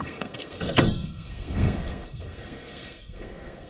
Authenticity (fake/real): fake